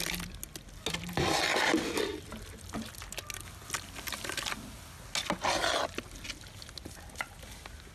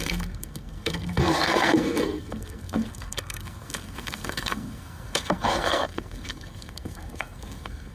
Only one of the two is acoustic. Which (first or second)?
first